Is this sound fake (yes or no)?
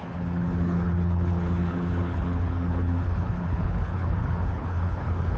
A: yes